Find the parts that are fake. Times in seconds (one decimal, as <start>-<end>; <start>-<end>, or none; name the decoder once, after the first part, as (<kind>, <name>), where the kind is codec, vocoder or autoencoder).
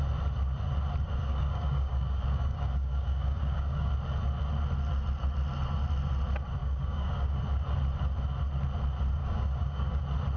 1.2-3.9 (codec, DAC); 6.6-7.4; 9.2-10.0